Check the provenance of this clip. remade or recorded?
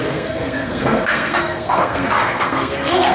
remade